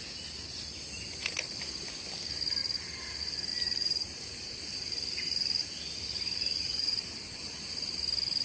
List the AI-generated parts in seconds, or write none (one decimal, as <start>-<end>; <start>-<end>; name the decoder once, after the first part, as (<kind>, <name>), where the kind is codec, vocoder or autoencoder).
3.5-7.7 (vocoder, BigVGAN v2)